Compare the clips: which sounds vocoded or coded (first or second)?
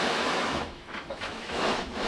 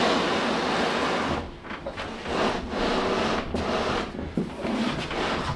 first